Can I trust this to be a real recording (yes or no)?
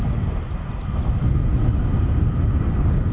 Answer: yes